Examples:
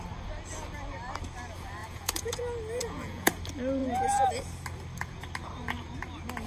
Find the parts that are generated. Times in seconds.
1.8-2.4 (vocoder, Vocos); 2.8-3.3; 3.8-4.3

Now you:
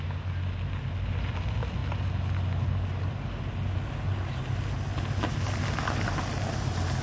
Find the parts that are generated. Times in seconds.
none